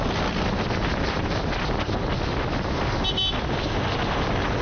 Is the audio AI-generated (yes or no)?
no